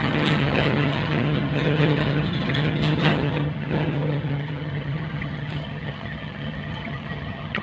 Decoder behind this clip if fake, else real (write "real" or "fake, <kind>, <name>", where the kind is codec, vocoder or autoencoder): fake, vocoder, HiFi-GAN